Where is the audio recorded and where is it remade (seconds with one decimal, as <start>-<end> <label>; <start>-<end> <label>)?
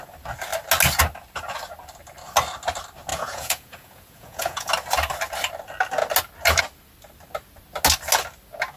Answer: 0.0-3.1 recorded; 3.1-4.7 remade; 4.7-8.8 recorded